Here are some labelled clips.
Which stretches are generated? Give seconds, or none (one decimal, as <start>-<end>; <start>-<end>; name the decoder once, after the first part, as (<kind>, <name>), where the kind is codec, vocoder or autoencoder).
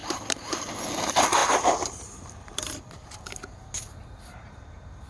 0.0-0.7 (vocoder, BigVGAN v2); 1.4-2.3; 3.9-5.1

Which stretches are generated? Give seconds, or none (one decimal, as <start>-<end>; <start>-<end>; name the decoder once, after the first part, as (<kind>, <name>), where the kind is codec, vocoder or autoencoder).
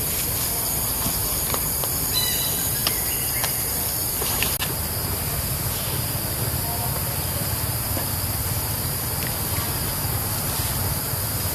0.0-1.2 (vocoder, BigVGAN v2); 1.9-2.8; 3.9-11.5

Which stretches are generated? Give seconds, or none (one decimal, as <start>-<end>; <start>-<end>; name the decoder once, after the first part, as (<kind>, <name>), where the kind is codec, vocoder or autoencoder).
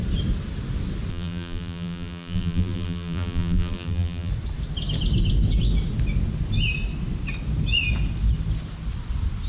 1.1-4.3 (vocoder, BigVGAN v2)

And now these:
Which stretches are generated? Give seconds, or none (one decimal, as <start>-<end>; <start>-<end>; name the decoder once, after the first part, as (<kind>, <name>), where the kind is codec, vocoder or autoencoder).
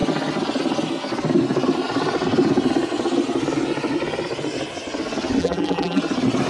5.4-6.0 (vocoder, BigVGAN v2)